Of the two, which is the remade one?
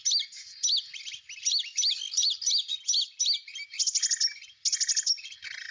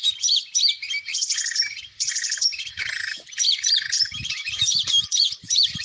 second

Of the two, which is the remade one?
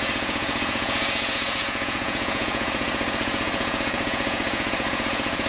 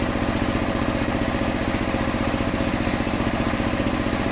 first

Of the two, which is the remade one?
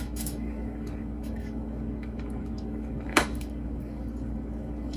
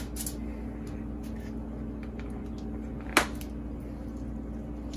first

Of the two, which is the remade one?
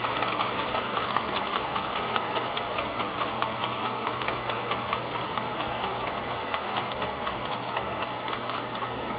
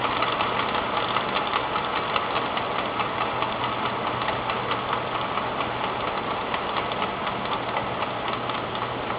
first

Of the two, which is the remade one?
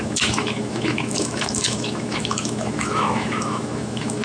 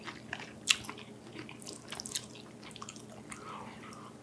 first